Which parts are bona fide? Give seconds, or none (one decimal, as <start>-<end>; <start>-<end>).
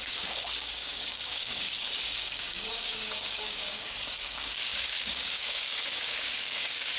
none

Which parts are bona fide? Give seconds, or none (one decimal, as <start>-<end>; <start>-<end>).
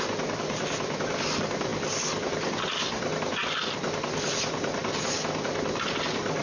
0.0-6.4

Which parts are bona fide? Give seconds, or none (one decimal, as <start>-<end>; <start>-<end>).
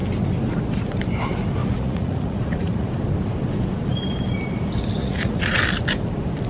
0.0-1.6; 2.9-5.0; 5.6-6.5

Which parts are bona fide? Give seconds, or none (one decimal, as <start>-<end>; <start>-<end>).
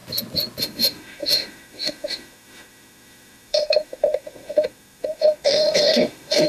0.0-0.6